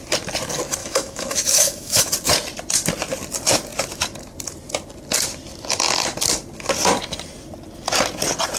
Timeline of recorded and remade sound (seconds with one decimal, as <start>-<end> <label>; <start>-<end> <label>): 0.0-0.8 recorded; 0.8-2.1 remade; 2.1-8.6 recorded